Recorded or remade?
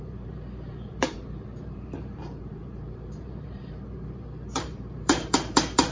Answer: remade